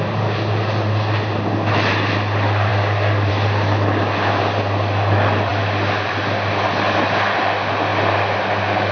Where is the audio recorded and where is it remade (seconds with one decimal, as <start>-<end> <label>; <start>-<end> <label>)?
0.0-8.9 recorded

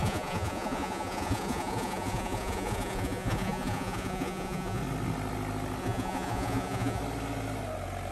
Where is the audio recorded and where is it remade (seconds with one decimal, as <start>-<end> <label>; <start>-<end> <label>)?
0.0-4.8 remade; 4.8-5.8 recorded; 5.8-7.0 remade; 7.0-8.1 recorded

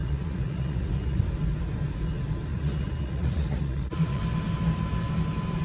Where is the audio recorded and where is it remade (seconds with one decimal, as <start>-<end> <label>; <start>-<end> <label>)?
0.0-1.2 remade; 1.2-2.5 recorded; 2.5-4.2 remade; 4.2-5.6 recorded

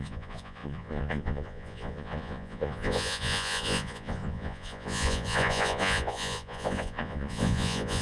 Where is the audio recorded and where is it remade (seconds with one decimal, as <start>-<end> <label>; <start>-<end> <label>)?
0.0-8.0 remade

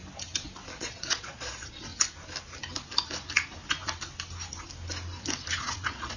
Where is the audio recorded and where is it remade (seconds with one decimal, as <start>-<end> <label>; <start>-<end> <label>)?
0.0-0.8 recorded; 0.8-1.9 remade; 1.9-5.6 recorded; 5.6-6.2 remade

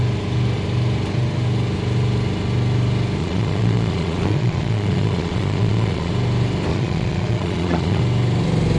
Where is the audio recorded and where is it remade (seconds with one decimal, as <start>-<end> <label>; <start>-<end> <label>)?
0.0-3.2 recorded; 3.2-6.1 remade; 6.1-6.7 recorded; 6.7-8.0 remade; 8.0-8.8 recorded

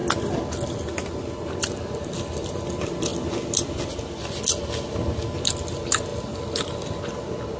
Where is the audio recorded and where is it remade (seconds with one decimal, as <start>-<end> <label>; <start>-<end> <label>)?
0.0-7.6 recorded